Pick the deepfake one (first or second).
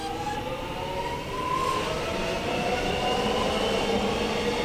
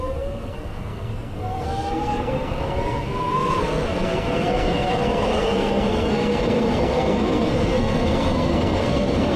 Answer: second